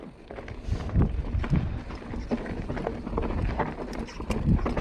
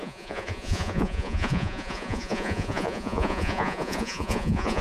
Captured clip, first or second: first